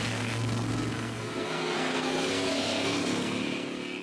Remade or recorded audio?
remade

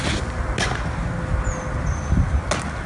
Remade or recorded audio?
recorded